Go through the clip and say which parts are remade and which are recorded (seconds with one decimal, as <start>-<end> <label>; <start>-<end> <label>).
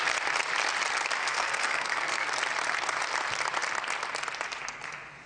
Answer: 0.0-1.2 recorded; 1.2-2.3 remade; 2.3-5.3 recorded